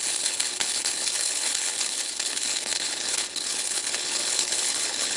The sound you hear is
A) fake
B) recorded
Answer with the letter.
A